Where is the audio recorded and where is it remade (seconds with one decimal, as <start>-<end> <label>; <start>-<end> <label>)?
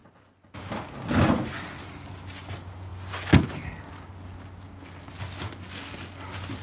0.0-6.6 recorded